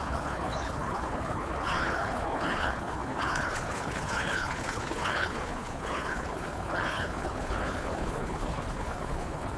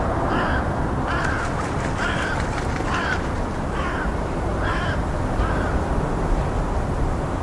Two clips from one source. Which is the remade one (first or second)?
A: first